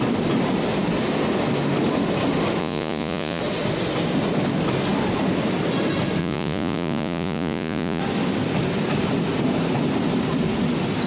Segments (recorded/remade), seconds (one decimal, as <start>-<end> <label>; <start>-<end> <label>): 0.0-2.6 recorded; 2.6-3.4 remade; 3.4-6.2 recorded; 6.2-8.0 remade; 8.0-11.1 recorded

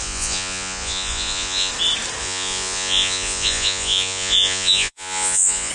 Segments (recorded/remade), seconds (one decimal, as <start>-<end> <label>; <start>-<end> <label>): 0.0-1.7 remade; 1.7-2.2 recorded; 2.2-5.7 remade

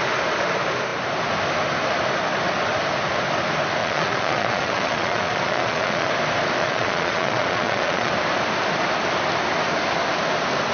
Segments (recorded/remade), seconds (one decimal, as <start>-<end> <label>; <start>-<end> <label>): 0.0-3.8 recorded; 3.8-6.1 remade; 6.1-6.6 recorded; 6.6-8.1 remade; 8.1-10.7 recorded

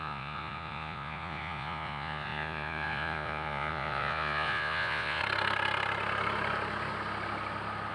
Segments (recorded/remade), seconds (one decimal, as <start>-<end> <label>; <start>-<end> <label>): 0.0-5.2 remade; 5.2-7.9 recorded